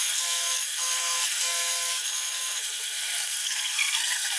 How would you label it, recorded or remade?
remade